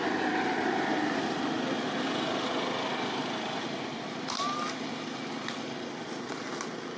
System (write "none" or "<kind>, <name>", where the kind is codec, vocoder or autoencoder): none